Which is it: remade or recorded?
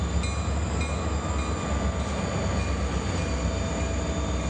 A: recorded